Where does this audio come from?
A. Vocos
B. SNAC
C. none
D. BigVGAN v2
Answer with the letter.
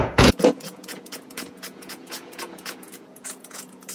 A